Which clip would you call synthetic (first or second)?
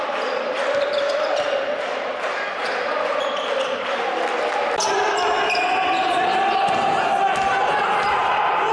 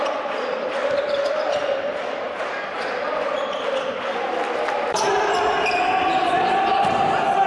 second